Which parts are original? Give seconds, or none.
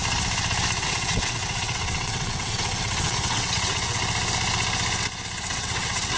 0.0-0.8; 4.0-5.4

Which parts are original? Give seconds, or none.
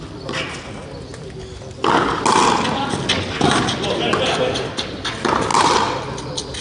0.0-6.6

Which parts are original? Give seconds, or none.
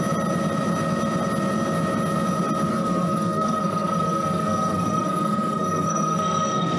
0.0-2.7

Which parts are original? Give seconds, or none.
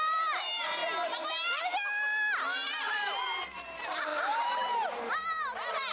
0.8-2.7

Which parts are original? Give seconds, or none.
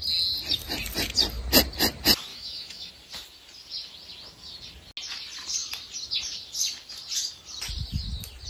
0.0-2.3; 2.9-8.5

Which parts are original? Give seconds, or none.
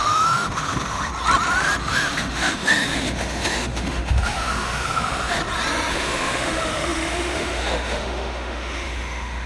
1.1-1.8; 5.4-5.9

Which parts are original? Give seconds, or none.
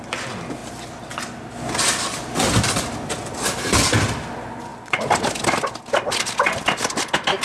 0.0-7.4